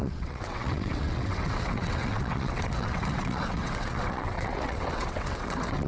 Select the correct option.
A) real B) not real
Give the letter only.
B